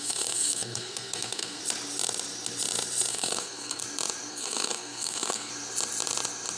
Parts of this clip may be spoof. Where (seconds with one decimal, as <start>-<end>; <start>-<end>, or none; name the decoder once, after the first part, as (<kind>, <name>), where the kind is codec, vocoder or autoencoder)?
0.0-1.6 (codec, SNAC); 3.1-3.8; 4.3-5.5